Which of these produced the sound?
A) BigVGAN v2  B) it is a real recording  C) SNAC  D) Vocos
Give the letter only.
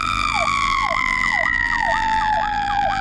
A